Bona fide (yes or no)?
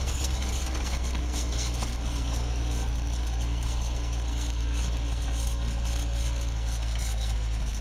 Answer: no